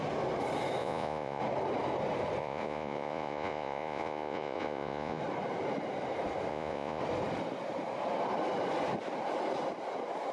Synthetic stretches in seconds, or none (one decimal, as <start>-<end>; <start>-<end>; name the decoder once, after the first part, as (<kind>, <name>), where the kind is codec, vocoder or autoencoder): 0.8-1.4 (vocoder, Vocos); 2.4-5.2; 6.5-7.0